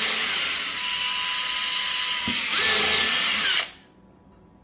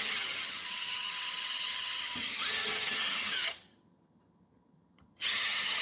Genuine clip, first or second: first